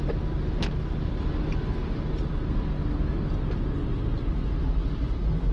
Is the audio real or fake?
real